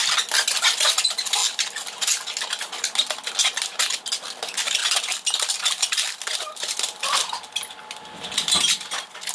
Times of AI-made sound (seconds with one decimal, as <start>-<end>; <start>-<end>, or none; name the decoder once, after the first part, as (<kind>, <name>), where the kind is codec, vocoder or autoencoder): none